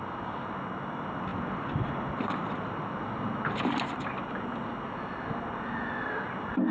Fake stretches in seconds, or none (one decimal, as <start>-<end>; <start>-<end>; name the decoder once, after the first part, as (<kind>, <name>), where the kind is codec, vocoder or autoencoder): 1.3-3.0 (vocoder, BigVGAN v2)